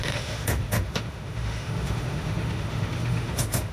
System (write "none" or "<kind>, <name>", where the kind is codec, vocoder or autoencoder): autoencoder, DAC-VAE